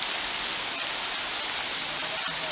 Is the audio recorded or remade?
recorded